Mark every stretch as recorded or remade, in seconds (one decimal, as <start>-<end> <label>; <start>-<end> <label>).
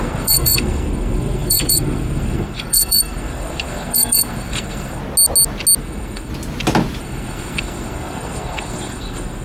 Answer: 0.0-5.0 remade; 5.0-5.8 recorded; 5.8-6.3 remade; 6.3-7.0 recorded; 7.0-9.4 remade